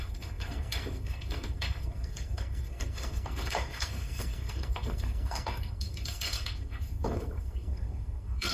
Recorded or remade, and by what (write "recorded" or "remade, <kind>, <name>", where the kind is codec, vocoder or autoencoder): remade, codec, SNAC